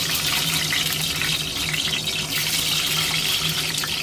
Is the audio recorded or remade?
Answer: recorded